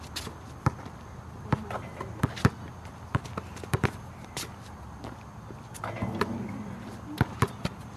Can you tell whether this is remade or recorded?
recorded